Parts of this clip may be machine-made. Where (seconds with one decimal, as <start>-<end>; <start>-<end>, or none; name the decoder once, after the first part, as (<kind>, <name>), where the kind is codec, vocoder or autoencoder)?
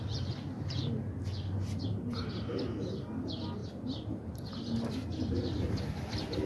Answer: none